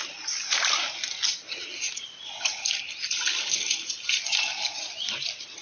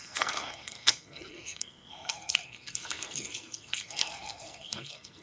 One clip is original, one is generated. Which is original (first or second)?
first